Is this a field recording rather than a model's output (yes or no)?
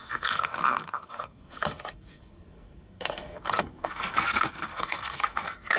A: no